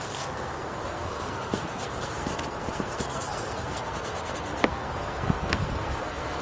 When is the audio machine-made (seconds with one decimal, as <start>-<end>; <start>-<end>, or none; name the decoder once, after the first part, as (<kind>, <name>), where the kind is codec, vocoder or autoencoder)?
0.0-6.4 (codec, SNAC)